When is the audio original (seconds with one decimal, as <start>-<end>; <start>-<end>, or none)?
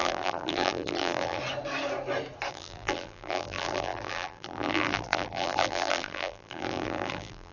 1.4-2.5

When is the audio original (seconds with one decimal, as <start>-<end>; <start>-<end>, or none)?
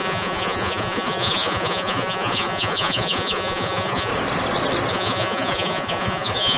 4.1-4.9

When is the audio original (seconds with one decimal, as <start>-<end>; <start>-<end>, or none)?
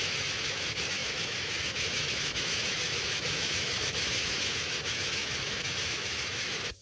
none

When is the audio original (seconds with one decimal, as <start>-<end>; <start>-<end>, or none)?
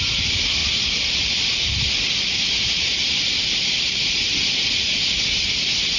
0.0-6.0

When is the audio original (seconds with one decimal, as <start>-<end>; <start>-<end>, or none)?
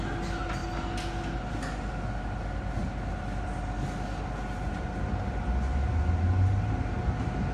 0.0-7.5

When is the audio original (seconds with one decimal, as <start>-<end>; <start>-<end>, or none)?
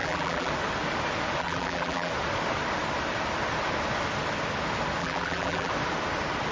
0.5-1.4; 2.1-5.0; 5.7-6.5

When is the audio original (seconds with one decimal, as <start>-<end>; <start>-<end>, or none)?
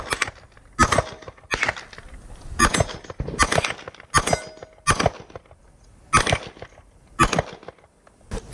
0.0-8.5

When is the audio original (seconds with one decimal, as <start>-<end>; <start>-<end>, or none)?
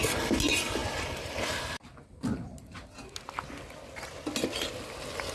0.0-5.3